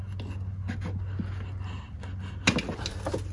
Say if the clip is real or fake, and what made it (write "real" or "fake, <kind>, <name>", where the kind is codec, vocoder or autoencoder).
real